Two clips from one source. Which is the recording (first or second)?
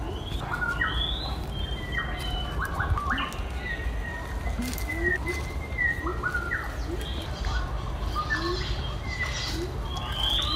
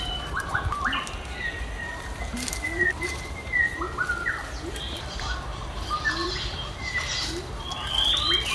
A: first